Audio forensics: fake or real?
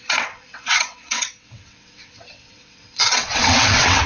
fake